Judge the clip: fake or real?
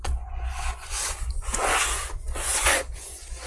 fake